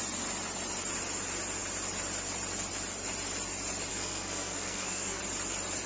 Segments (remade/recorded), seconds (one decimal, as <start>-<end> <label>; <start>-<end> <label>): 0.0-3.9 recorded; 3.9-5.2 remade; 5.2-5.9 recorded